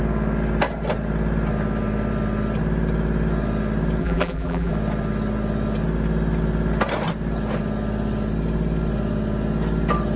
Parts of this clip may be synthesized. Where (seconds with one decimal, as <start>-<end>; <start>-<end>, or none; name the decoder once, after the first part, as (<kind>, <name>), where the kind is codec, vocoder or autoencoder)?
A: 4.0-4.7 (vocoder, BigVGAN v2)